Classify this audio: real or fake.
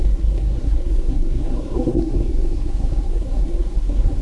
fake